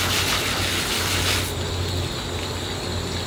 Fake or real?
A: real